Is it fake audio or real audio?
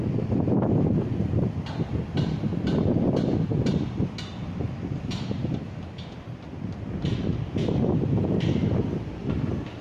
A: real